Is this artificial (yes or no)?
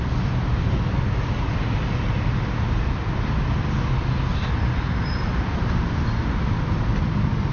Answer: no